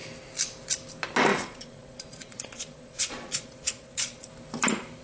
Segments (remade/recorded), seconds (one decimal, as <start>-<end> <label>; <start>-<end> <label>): 0.0-1.3 recorded; 1.3-4.3 remade; 4.3-5.0 recorded